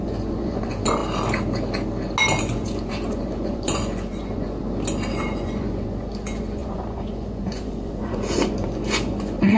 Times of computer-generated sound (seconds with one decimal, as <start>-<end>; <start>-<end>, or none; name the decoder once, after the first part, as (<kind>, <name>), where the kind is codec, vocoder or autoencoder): 0.0-1.0 (vocoder, Vocos); 2.4-4.6; 5.1-9.6